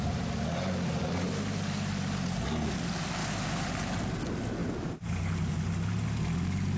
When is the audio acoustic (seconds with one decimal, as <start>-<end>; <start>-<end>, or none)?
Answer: 0.0-6.8

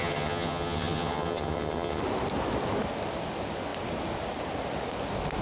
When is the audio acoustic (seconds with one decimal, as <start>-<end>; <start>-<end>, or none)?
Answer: 2.0-5.4